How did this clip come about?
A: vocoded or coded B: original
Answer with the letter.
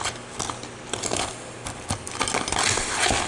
B